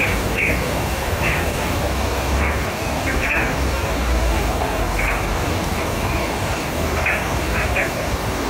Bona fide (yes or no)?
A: no